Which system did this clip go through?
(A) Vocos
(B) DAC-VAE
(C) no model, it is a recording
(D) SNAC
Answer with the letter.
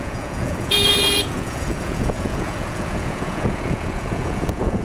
A